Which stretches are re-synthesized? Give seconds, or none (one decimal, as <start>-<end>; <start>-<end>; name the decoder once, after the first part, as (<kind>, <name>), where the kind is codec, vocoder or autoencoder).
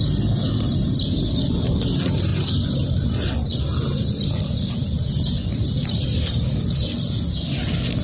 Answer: none